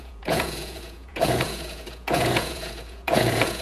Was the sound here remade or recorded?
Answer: remade